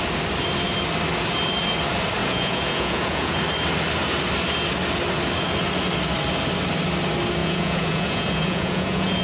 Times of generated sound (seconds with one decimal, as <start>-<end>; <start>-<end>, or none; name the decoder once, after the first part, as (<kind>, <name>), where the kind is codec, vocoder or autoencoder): 2.2-3.4 (vocoder, Vocos); 7.4-9.2